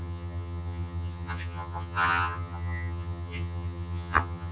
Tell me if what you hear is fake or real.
fake